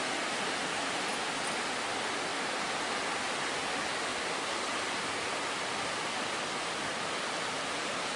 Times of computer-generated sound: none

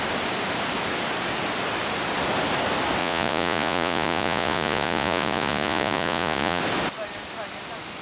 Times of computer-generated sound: 3.0-6.6 (vocoder, Vocos)